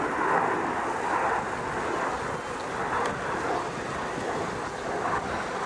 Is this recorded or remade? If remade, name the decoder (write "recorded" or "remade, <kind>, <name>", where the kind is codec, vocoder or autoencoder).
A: recorded